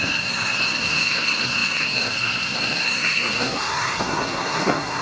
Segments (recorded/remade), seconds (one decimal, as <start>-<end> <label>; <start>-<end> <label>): 0.0-5.0 remade